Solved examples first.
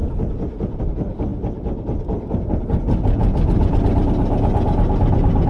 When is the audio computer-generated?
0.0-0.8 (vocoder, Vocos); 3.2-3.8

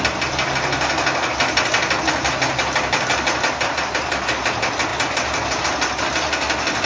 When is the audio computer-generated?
none

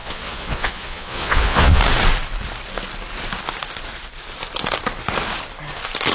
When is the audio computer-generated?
0.0-1.8 (vocoder, Vocos)

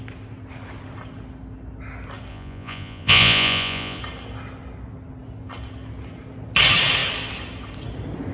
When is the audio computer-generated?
2.3-4.0 (vocoder, Vocos)

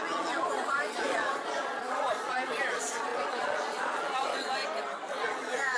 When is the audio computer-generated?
0.0-4.6 (vocoder, Vocos); 5.1-5.8